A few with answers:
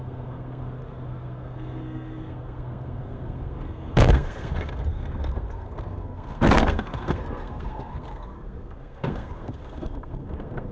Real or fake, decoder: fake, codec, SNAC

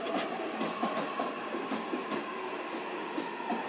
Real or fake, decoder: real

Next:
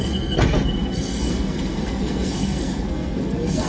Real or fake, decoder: fake, codec, SNAC